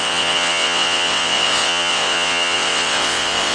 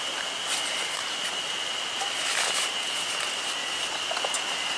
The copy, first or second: first